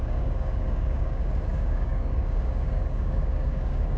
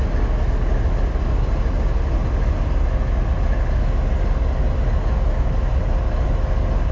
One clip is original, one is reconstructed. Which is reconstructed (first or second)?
first